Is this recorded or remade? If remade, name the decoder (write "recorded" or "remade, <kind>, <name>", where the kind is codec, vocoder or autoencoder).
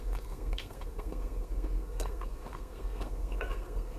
remade, codec, SNAC